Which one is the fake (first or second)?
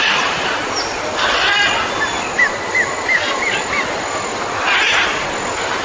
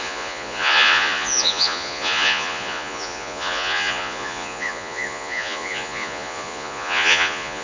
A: second